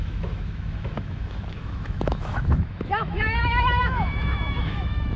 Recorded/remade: remade